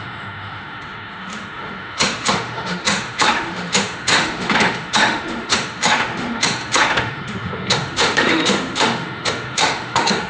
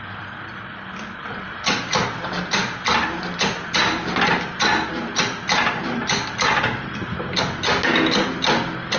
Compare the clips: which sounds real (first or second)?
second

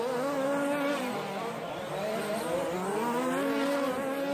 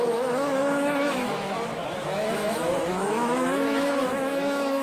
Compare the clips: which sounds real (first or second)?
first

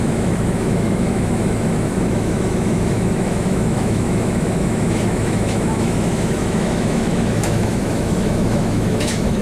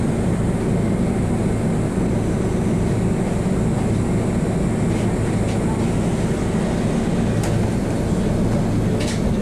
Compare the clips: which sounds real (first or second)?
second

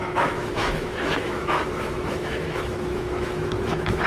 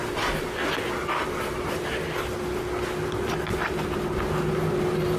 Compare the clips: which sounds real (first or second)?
second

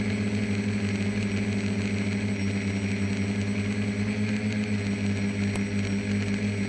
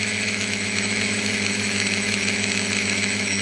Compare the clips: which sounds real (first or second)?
first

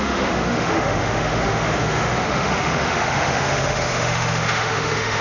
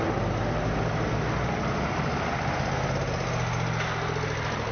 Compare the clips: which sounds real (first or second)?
second